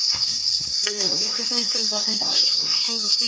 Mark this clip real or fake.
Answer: fake